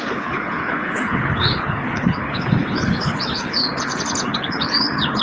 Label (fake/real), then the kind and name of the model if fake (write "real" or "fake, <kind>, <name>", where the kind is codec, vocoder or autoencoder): fake, codec, HILCodec